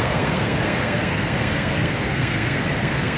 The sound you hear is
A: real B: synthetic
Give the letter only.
B